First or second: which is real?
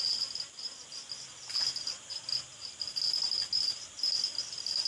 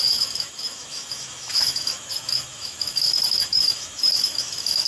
first